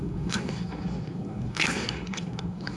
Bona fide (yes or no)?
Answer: no